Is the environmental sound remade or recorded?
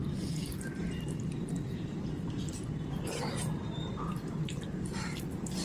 remade